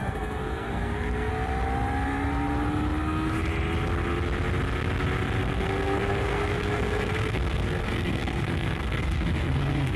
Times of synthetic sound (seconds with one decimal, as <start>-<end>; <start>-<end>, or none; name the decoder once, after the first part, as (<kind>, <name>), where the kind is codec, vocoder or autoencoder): 0.0-1.3 (codec, SNAC); 5.4-10.0